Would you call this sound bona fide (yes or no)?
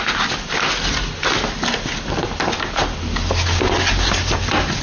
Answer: yes